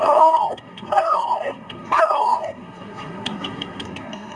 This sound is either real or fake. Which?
fake